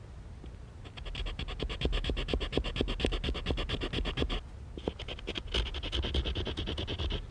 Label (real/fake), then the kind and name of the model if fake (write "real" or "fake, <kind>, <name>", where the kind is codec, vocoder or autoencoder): real